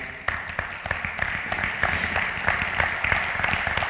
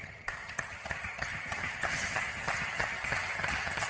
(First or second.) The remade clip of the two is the second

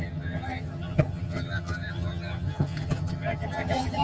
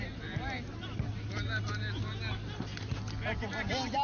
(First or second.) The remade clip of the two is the first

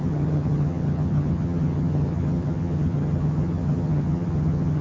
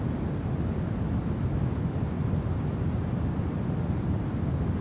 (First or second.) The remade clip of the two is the first